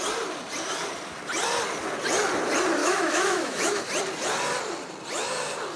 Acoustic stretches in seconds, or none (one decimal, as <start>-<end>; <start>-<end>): 0.0-2.8; 3.8-5.8